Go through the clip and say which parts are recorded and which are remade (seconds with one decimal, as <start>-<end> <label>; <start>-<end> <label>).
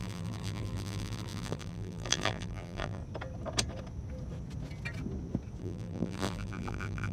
0.0-3.0 remade; 3.0-5.6 recorded; 5.6-7.1 remade